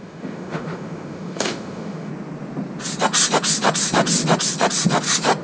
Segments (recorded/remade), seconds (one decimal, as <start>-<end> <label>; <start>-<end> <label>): 0.0-2.1 remade; 2.1-5.4 recorded